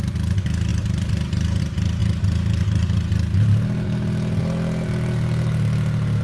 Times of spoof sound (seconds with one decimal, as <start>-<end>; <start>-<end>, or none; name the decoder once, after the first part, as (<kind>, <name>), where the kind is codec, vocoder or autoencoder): 0.7-1.6 (vocoder, BigVGAN v2)